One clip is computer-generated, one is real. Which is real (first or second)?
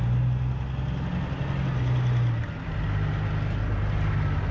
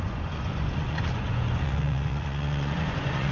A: first